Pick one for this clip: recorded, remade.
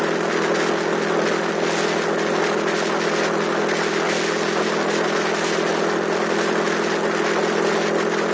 recorded